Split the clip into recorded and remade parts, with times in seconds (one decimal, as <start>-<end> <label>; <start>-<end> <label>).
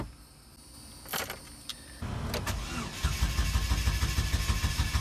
0.0-5.0 recorded